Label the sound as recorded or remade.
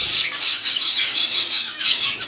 remade